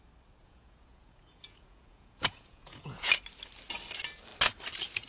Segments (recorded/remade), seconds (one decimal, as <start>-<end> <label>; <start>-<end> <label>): 0.0-0.4 recorded; 0.4-3.1 remade; 3.1-5.1 recorded